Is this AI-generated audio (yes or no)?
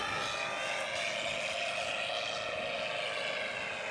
no